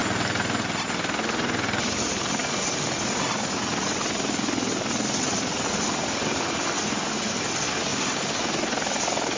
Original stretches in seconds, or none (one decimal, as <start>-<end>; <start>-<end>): 0.0-9.4